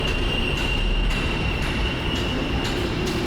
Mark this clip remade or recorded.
remade